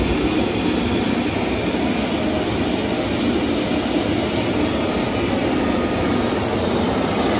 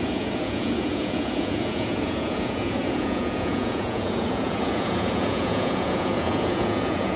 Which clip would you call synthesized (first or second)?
second